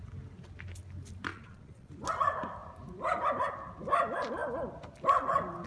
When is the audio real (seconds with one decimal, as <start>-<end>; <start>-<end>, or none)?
0.0-1.3; 1.9-5.7